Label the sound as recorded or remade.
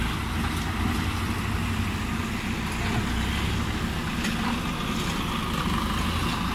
recorded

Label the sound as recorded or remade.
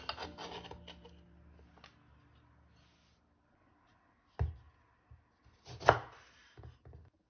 recorded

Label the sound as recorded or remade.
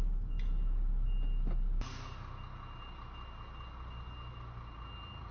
recorded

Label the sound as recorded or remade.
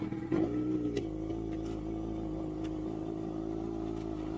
recorded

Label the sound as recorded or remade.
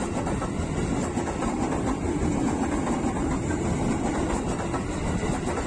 recorded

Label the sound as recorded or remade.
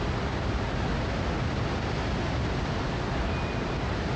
recorded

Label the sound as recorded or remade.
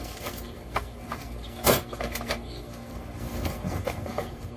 remade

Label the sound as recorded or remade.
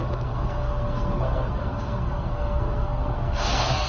remade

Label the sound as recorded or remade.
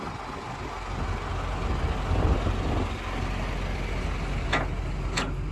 recorded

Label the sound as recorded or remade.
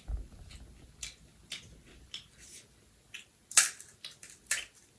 recorded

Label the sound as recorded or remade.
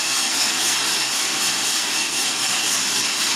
remade